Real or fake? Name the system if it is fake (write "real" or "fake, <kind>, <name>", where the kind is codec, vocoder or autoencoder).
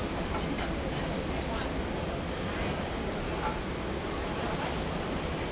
real